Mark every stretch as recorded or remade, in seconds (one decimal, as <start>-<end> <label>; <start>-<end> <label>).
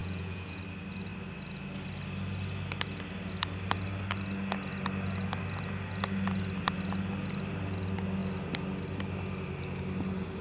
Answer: 0.0-0.6 remade; 0.6-10.4 recorded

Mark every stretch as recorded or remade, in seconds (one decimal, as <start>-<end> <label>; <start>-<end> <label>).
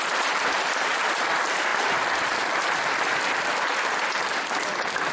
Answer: 0.0-5.1 recorded